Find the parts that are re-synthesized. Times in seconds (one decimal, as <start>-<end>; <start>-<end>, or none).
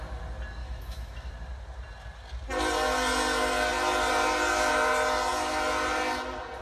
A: 0.6-1.3